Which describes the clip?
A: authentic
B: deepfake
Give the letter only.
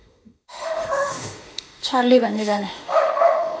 B